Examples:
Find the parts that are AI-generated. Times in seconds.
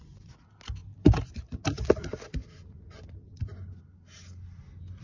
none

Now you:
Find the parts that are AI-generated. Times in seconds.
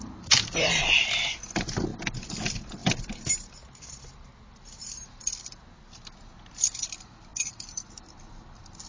none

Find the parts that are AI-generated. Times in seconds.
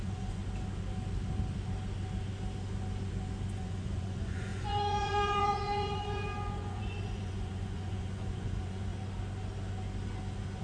0.0-0.4 (vocoder, Vocos); 3.5-8.9